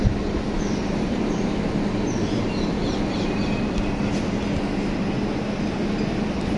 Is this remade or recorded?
recorded